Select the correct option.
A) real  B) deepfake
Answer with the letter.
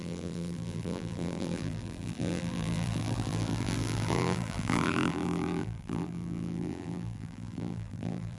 B